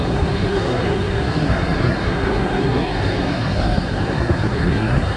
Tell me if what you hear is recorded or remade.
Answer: remade